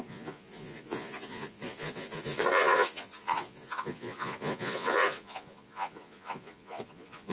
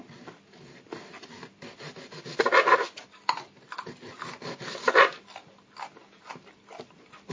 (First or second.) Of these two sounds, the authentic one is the second